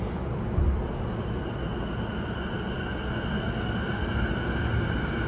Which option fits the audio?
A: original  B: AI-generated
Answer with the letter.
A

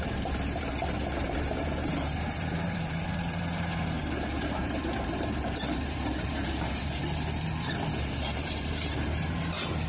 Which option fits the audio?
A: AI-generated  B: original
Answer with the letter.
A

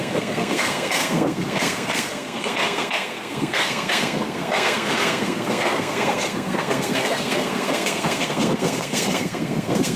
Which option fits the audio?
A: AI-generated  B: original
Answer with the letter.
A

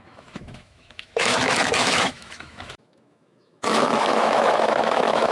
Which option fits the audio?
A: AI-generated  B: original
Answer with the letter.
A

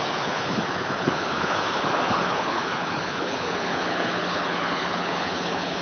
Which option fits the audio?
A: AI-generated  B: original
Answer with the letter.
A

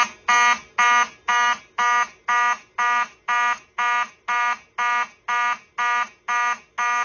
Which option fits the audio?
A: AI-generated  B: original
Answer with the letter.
B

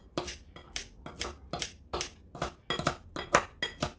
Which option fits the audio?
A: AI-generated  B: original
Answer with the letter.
B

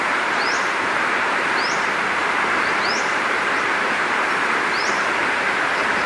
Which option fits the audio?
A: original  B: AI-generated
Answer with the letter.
B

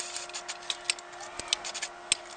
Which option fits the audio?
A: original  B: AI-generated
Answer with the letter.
A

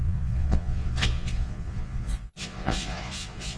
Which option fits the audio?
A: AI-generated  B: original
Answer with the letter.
A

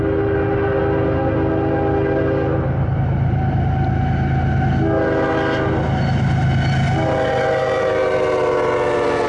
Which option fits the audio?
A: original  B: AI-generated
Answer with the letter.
A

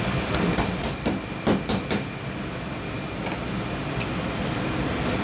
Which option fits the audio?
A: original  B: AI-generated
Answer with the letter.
A